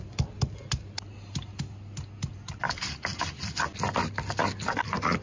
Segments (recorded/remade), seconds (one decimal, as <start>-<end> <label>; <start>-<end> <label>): 0.0-5.2 recorded